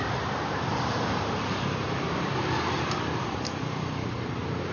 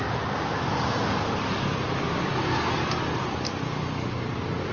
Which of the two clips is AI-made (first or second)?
first